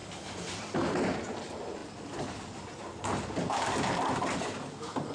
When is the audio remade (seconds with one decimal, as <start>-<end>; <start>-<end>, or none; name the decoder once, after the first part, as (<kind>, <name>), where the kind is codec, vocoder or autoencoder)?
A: none